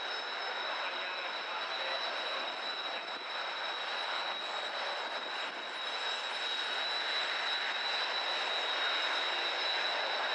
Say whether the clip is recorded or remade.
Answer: recorded